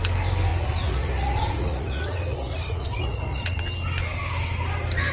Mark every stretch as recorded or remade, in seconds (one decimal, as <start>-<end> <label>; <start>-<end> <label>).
0.0-0.5 recorded; 0.5-3.6 remade; 3.6-5.1 recorded

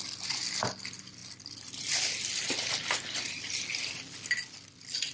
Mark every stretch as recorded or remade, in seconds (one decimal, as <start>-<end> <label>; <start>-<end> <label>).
0.0-5.1 recorded

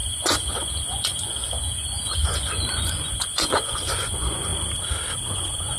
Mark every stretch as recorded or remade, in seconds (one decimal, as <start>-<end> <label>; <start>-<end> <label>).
0.0-4.5 remade; 4.5-5.1 recorded; 5.1-5.8 remade

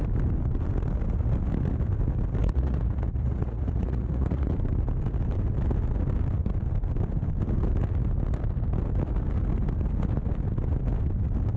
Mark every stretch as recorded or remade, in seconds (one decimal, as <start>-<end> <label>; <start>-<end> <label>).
0.0-2.4 recorded; 2.4-4.5 remade; 4.5-11.6 recorded

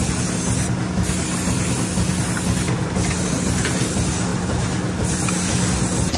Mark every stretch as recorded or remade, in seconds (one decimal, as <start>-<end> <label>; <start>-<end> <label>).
0.0-6.2 recorded

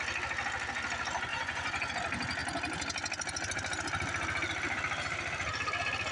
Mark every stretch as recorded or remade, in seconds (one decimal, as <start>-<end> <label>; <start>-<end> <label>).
0.0-1.3 recorded; 1.3-1.9 remade; 1.9-6.1 recorded